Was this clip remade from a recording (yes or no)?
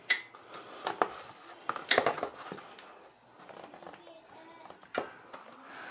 no